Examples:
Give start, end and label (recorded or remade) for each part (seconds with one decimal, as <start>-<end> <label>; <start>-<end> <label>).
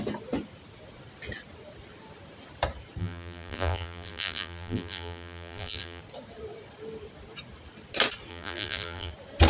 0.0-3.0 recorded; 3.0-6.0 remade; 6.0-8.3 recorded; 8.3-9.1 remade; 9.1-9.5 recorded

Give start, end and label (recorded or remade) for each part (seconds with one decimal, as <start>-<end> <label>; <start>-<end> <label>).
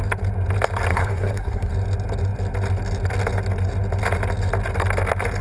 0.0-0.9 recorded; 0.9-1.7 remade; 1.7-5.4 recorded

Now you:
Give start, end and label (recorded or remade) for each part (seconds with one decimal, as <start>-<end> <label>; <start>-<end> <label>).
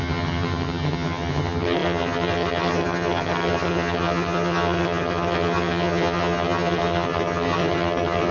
0.0-8.3 remade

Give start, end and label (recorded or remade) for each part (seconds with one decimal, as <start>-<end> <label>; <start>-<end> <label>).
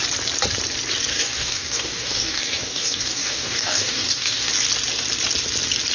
0.0-1.1 recorded; 1.1-4.5 remade; 4.5-5.9 recorded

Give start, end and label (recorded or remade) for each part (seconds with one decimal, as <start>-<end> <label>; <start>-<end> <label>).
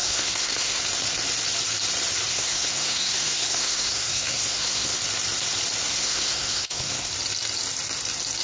0.0-0.8 remade; 0.8-2.3 recorded; 2.3-5.0 remade; 5.0-5.9 recorded; 5.9-7.1 remade; 7.1-8.4 recorded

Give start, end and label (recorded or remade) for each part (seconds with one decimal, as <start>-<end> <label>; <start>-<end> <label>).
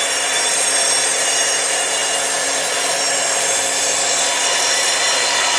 0.0-2.0 remade; 2.0-4.5 recorded; 4.5-5.6 remade